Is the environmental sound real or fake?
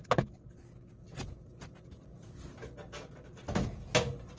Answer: real